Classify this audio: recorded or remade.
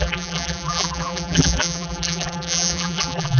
remade